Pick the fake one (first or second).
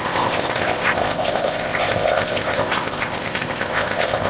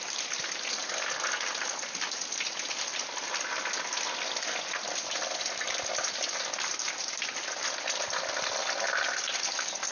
first